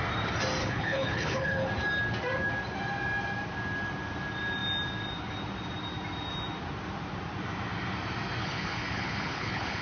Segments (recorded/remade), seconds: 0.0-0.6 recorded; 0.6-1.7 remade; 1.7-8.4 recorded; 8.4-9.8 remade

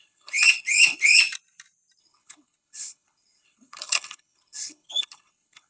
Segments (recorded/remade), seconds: 0.0-1.2 remade; 1.2-2.0 recorded; 2.0-5.7 remade